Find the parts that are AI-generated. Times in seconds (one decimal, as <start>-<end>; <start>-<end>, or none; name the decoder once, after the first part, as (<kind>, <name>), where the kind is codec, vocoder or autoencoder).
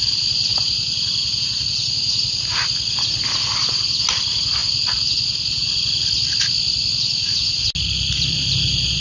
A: none